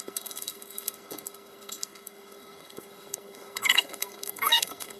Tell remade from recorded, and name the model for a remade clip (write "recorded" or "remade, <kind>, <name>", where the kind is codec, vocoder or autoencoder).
remade, codec, SNAC